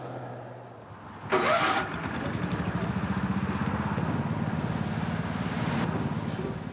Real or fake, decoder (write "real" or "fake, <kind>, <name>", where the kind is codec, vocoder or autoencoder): real